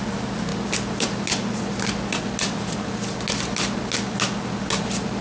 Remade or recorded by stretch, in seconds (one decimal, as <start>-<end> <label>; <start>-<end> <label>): 0.0-5.2 recorded